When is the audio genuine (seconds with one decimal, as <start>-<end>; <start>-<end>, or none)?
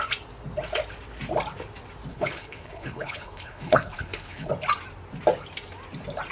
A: 0.0-2.1; 4.5-6.3